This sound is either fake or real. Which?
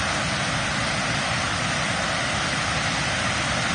real